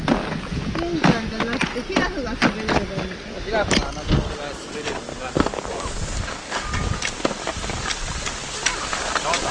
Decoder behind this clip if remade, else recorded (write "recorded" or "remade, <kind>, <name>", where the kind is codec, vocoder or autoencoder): recorded